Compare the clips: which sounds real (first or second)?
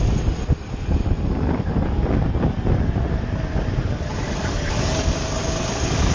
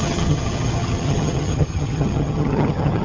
first